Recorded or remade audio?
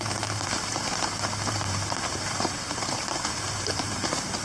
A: remade